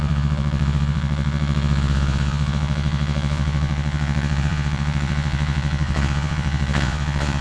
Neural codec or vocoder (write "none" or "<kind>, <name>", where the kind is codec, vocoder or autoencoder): vocoder, Vocos